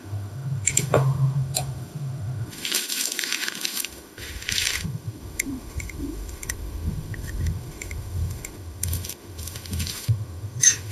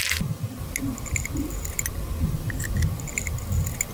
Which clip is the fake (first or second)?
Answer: first